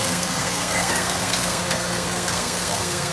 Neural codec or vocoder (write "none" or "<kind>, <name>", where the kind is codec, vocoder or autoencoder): codec, SNAC